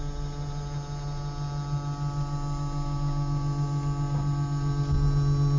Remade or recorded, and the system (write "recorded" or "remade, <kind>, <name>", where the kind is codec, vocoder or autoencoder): recorded